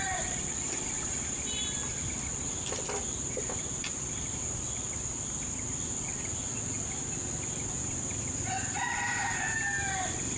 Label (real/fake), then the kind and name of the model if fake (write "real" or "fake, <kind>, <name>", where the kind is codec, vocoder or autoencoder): real